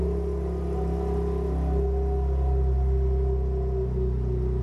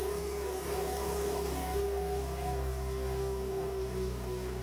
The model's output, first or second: second